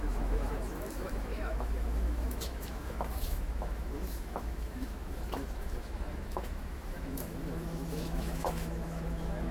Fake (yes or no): yes